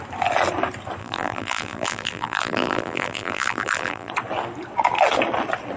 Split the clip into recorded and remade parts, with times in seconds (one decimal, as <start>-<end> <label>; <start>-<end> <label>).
0.0-1.0 recorded; 1.0-4.1 remade; 4.1-5.8 recorded